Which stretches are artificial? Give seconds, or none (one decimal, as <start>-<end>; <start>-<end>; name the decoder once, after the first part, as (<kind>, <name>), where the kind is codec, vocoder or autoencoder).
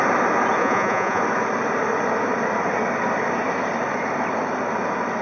0.6-1.2 (vocoder, Vocos)